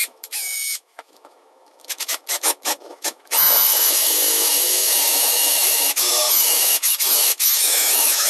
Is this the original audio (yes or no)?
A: no